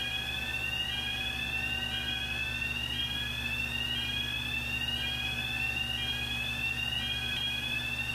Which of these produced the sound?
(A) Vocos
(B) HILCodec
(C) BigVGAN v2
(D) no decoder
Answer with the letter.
D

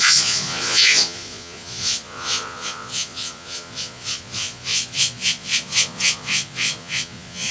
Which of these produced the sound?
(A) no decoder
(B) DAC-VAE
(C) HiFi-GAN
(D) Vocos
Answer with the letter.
D